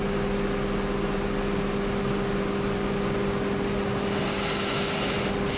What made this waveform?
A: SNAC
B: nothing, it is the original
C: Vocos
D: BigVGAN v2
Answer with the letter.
B